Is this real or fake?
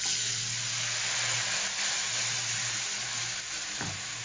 real